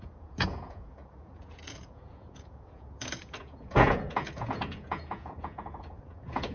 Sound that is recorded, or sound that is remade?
remade